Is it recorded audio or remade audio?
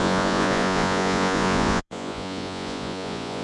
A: remade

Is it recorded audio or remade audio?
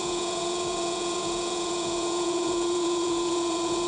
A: remade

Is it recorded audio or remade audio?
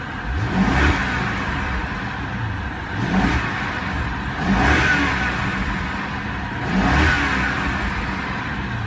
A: recorded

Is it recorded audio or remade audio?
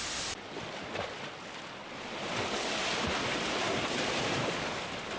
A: recorded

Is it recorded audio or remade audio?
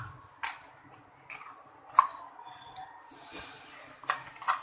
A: recorded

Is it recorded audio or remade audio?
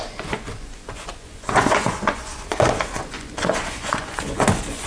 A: remade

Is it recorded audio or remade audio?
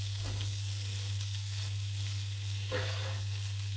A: remade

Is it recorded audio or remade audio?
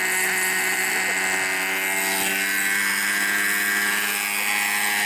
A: recorded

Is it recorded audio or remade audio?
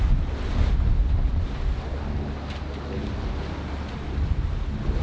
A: recorded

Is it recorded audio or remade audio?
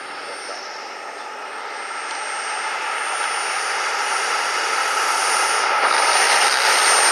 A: recorded